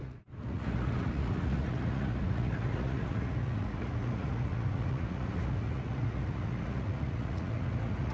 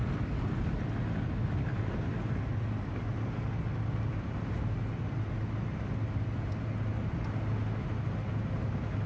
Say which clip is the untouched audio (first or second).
second